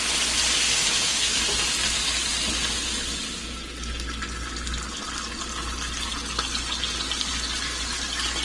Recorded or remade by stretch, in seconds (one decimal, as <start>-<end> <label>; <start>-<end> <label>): 0.0-0.7 recorded; 0.7-1.4 remade; 1.4-8.4 recorded